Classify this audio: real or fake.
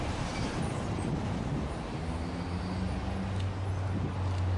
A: real